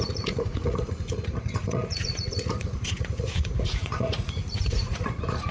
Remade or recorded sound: remade